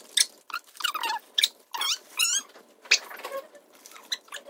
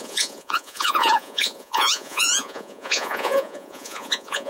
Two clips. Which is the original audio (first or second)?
first